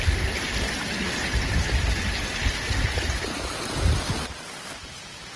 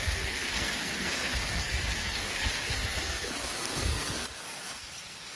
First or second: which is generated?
second